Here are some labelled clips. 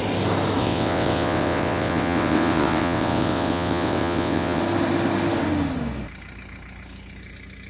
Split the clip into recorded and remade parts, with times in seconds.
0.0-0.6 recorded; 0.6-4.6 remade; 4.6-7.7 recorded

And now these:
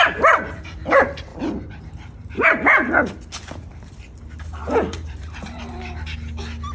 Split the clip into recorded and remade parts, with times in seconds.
0.0-1.3 remade; 1.3-3.9 recorded; 3.9-5.7 remade; 5.7-6.7 recorded

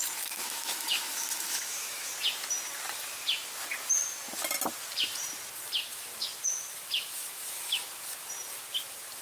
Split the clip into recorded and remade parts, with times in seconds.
0.0-2.1 remade; 2.1-5.9 recorded; 5.9-7.8 remade; 7.8-9.2 recorded